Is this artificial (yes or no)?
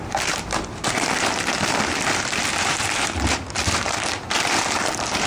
yes